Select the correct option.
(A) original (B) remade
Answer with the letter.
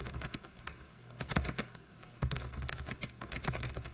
B